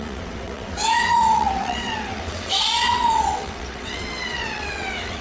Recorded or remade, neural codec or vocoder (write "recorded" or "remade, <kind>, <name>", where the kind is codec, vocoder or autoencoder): remade, vocoder, WaveNeXt